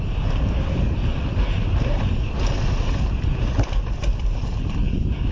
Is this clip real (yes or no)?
yes